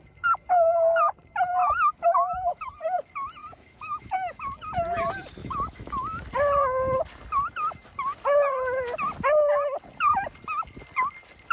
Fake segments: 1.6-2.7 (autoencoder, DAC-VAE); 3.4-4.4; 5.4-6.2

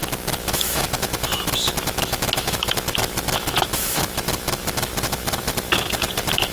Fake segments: 0.0-6.5 (autoencoder, DAC-VAE)

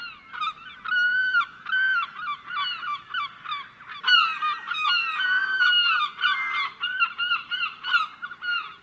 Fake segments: none

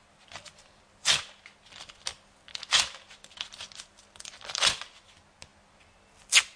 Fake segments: none

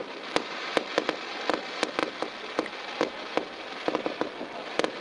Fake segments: none

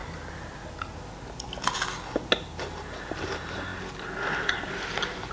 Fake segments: 2.4-3.7 (vocoder, BigVGAN v2)

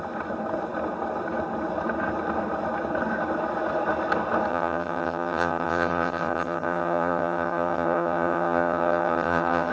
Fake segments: 4.5-9.7 (vocoder, HiFi-GAN)